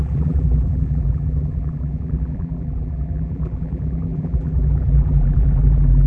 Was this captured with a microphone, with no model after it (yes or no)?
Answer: no